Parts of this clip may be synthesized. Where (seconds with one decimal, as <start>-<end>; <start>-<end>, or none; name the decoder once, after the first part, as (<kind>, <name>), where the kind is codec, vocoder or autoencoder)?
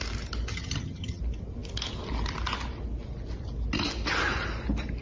0.5-1.2 (vocoder, HiFi-GAN)